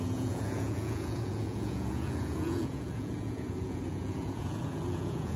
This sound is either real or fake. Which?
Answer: fake